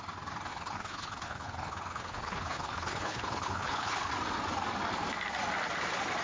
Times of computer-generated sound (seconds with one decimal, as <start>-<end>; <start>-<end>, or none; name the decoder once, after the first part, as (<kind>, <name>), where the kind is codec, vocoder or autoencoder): 0.5-4.1 (codec, HILCodec)